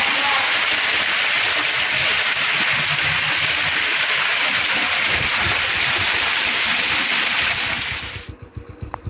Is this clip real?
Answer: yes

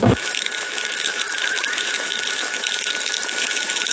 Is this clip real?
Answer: no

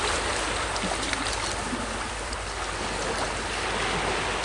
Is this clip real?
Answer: yes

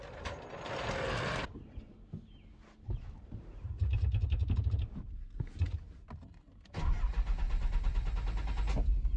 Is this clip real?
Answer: yes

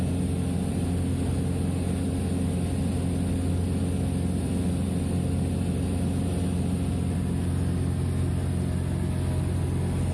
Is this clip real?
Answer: yes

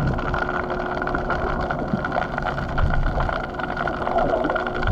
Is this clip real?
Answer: yes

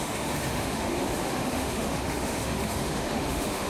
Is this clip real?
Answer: no